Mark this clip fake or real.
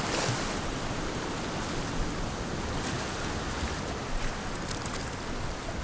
real